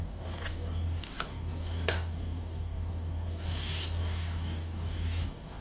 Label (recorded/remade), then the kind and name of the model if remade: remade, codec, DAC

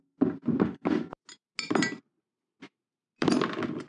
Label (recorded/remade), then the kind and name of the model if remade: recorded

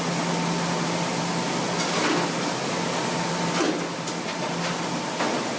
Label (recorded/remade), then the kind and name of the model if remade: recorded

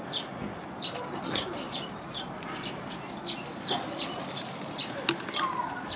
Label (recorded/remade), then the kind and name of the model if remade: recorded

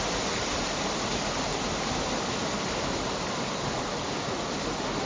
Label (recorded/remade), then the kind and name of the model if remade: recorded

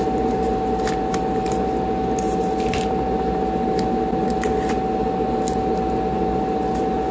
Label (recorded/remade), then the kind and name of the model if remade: recorded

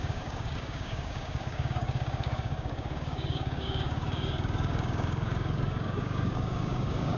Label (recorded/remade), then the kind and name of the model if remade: remade, codec, DAC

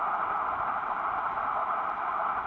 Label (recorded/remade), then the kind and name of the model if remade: recorded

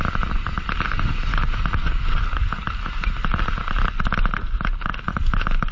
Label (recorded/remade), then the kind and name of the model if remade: recorded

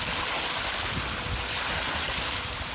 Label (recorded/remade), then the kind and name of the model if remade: recorded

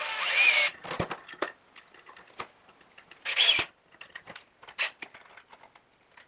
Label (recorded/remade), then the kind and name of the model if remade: recorded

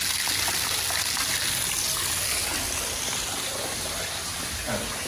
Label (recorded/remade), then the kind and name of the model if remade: recorded